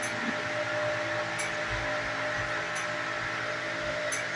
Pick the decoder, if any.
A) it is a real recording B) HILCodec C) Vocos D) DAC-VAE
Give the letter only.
A